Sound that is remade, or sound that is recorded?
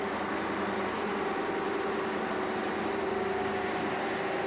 recorded